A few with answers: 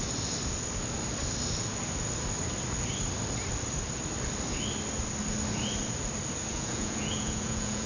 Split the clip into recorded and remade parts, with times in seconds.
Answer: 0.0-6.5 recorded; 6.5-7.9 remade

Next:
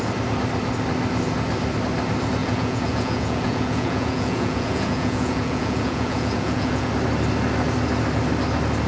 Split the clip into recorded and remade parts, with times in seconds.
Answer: 0.0-2.4 recorded; 2.4-6.9 remade; 6.9-8.9 recorded

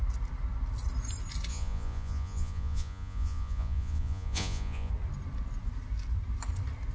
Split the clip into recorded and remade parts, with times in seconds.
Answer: 0.0-1.5 recorded; 1.5-4.9 remade; 4.9-6.9 recorded

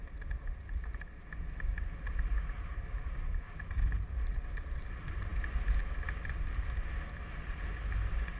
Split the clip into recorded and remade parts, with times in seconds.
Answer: 0.0-8.4 recorded

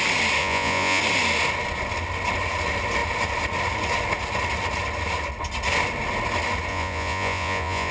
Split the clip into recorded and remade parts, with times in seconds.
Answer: 0.0-0.4 recorded; 0.4-1.0 remade; 1.0-6.7 recorded; 6.7-7.9 remade